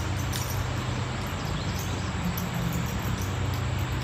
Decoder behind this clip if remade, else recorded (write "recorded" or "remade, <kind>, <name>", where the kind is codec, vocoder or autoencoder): recorded